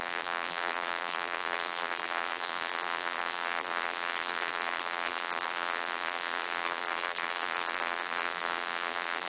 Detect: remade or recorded remade